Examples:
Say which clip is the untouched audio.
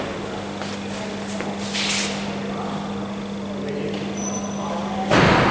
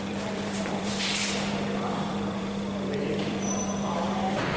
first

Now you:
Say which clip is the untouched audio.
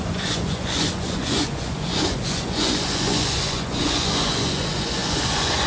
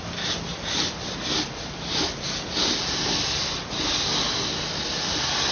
second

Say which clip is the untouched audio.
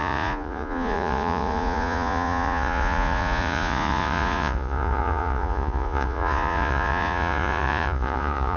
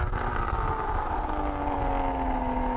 second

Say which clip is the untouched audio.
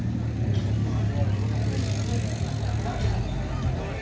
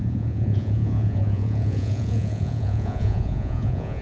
first